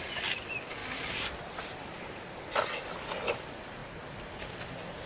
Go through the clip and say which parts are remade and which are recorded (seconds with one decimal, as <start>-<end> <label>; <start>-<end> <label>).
0.0-5.1 recorded